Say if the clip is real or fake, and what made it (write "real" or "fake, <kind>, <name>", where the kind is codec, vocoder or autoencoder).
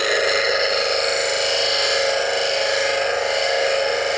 real